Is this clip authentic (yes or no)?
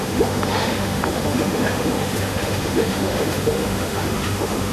no